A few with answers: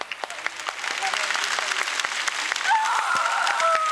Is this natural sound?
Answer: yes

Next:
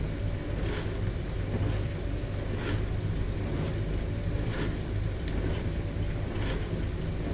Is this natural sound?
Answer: yes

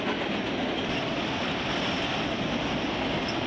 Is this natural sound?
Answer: yes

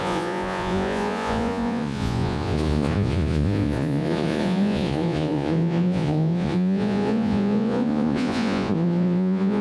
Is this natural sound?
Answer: no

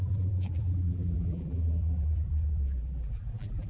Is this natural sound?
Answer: no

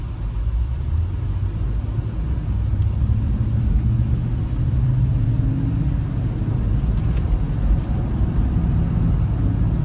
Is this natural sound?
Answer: yes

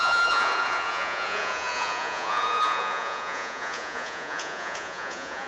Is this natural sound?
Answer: no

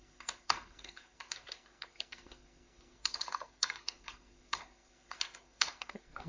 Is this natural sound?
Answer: no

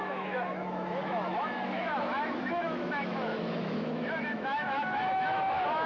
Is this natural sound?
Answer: no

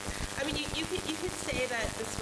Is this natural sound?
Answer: yes